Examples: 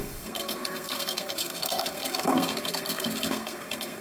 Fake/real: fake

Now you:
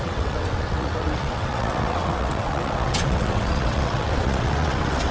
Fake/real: fake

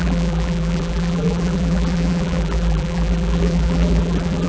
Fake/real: fake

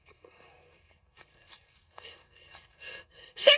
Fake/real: fake